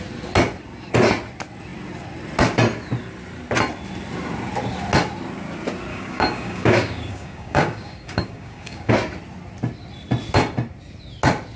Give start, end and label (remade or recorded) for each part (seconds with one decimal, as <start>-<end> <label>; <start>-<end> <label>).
0.0-5.9 recorded; 5.9-8.9 remade; 8.9-11.6 recorded

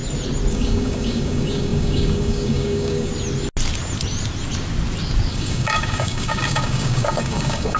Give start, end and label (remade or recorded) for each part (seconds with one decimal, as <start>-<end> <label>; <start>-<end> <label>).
0.0-0.5 recorded; 0.5-3.1 remade; 3.1-5.3 recorded; 5.3-7.8 remade

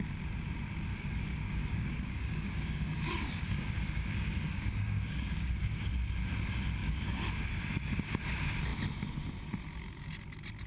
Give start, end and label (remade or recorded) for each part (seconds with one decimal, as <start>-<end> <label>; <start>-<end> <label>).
0.0-0.9 recorded; 0.9-5.9 remade; 5.9-6.8 recorded; 6.8-8.2 remade; 8.2-10.7 recorded